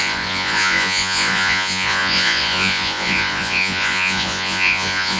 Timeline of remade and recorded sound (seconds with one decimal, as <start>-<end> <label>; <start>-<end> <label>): 0.0-5.2 remade